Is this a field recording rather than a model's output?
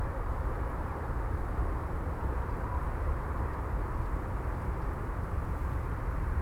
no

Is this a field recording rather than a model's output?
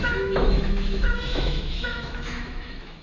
no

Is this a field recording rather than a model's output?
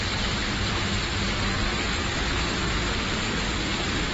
yes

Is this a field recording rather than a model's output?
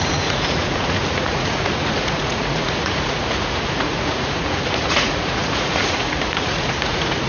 no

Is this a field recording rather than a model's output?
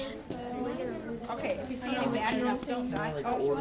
yes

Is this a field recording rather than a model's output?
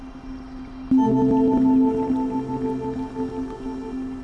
yes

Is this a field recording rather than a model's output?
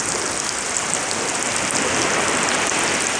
yes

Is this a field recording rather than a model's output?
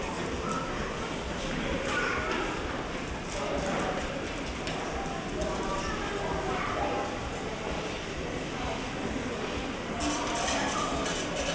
yes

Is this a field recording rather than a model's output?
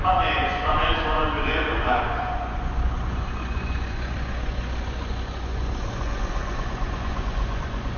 no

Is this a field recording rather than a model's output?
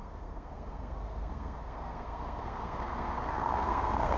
no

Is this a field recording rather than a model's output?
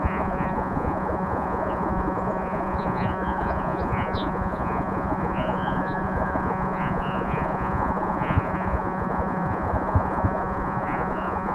no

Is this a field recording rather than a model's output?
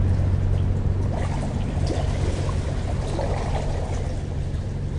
yes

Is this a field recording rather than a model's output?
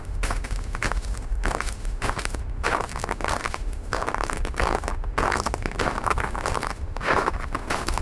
no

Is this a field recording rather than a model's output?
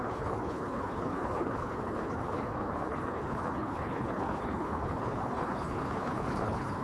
no